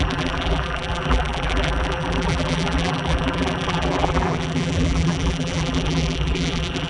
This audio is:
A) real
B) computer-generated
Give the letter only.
B